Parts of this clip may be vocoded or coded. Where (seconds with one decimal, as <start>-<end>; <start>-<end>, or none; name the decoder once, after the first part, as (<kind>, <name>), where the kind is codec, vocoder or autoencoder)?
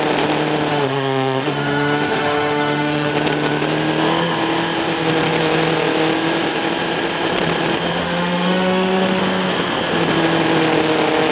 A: 0.7-3.1 (autoencoder, DAC-VAE); 8.0-9.2